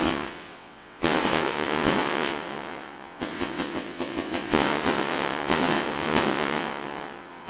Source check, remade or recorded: remade